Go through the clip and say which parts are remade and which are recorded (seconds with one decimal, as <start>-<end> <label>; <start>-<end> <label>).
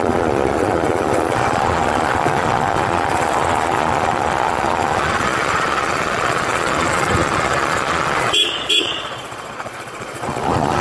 0.0-10.8 remade